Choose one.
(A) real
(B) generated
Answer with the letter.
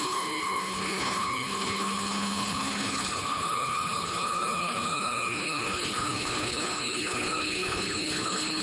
B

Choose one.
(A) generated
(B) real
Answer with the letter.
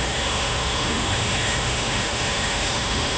A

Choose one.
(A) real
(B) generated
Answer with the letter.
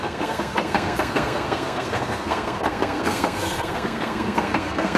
B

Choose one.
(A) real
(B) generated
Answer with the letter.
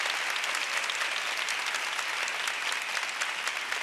A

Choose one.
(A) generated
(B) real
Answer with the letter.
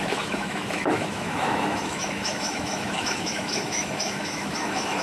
A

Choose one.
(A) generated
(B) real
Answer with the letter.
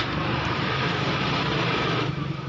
A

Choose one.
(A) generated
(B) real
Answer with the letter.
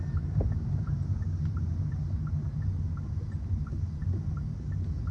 B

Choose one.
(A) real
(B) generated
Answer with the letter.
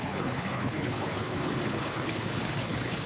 B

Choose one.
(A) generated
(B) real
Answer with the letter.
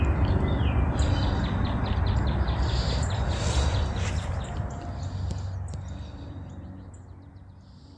B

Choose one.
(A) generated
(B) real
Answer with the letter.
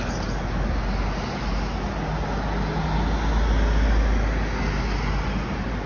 B